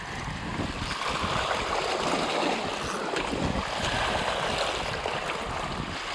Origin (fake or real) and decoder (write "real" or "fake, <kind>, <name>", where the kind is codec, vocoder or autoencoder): real